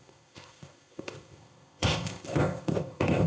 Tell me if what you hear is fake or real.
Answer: fake